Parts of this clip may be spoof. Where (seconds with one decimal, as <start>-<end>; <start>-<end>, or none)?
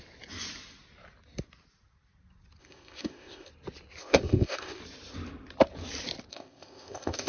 2.6-3.5; 4.0-4.8; 6.3-7.3